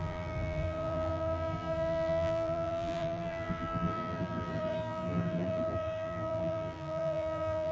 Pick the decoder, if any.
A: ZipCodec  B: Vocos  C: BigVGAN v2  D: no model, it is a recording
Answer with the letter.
C